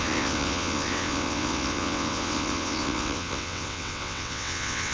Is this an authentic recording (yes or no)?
no